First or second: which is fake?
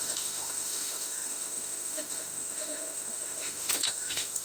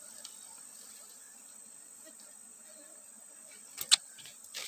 first